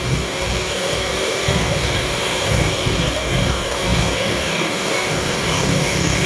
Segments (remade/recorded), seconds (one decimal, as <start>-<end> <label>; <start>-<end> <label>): 0.0-6.3 remade